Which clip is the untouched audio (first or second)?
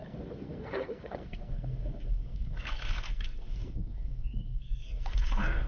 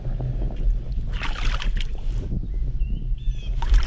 second